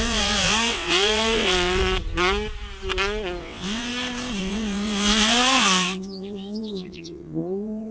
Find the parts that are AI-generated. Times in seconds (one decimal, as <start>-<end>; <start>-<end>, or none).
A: 0.0-1.8; 3.4-3.9; 4.4-7.9